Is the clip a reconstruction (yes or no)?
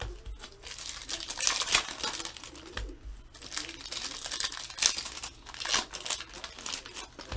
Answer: no